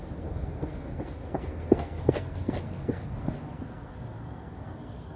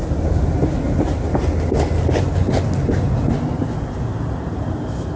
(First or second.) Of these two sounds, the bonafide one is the second